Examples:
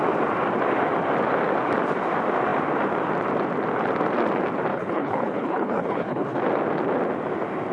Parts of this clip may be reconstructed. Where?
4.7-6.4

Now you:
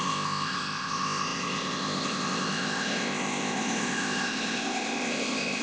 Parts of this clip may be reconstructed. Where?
0.0-5.6